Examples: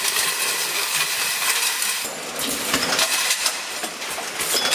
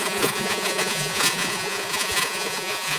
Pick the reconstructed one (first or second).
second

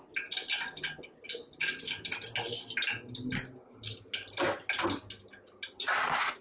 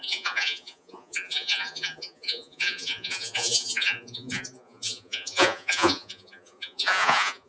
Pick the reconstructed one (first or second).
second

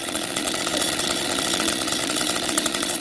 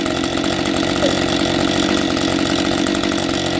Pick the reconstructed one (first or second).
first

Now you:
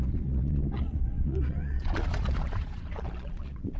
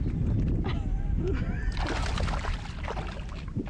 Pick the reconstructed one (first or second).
first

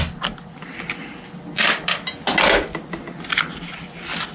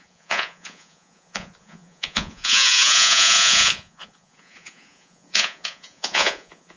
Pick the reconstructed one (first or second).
second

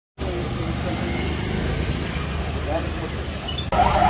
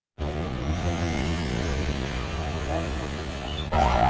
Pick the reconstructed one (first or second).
second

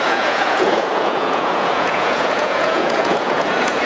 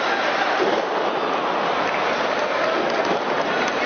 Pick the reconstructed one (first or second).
first